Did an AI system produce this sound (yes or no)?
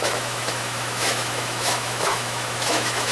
yes